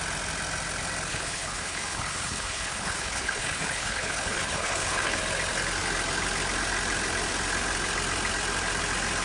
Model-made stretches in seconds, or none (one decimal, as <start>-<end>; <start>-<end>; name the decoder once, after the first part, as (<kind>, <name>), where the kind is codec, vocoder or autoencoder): 1.1-5.2 (codec, HILCodec)

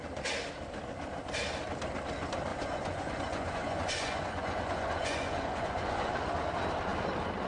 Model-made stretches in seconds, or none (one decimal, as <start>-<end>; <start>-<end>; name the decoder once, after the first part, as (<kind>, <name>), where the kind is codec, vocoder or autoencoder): 2.5-6.1 (vocoder, Vocos)

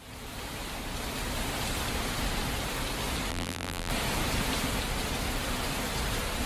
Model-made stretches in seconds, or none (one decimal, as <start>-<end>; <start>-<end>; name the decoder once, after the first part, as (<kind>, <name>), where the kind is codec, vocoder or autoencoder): 3.3-3.9 (vocoder, BigVGAN v2)

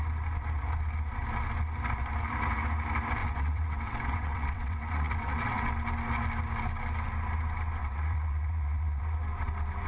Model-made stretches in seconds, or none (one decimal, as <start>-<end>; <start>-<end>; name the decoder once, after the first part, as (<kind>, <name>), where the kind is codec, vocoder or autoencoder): 3.2-5.7 (vocoder, WaveNeXt); 7.8-9.0

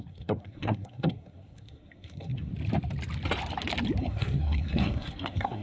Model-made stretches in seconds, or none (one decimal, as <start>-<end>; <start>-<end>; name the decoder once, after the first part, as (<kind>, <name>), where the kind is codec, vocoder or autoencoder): 0.0-2.5 (codec, SNAC); 4.0-5.6